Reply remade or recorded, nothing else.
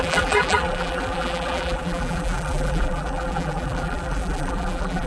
remade